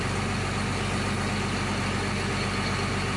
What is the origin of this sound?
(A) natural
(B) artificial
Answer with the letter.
A